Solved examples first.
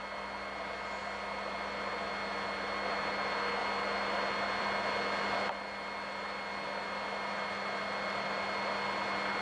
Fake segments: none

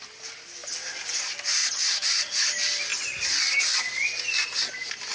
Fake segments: 1.6-2.5 (vocoder, Vocos)

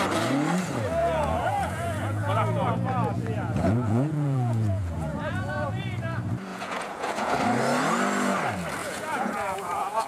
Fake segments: 1.0-5.8 (vocoder, Vocos); 6.5-7.4; 8.8-10.1

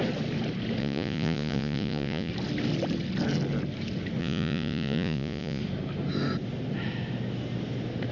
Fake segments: 0.8-2.3 (vocoder, Vocos); 4.2-5.6

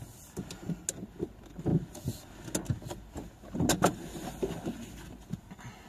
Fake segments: none

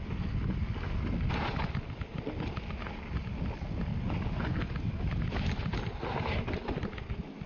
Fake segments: none

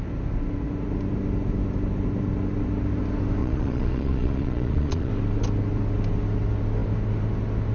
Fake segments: 3.4-5.1 (vocoder, Vocos)

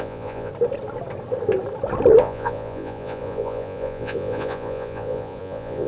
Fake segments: 0.0-0.5 (vocoder, Vocos); 2.2-5.9